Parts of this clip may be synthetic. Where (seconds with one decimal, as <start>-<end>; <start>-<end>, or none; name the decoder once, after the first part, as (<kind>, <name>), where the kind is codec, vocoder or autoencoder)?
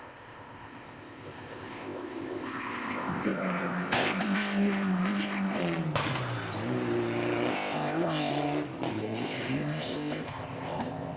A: 0.0-5.6 (codec, ZipCodec); 7.5-8.3; 9.0-11.2